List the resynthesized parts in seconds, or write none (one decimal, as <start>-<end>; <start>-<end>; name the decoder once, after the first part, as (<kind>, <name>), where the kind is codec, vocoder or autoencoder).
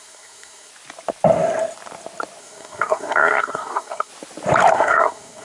0.0-0.7 (codec, SNAC); 2.4-4.1; 4.7-5.4